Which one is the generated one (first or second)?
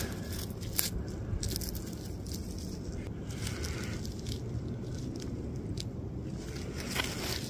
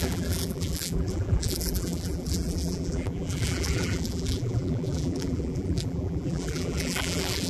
second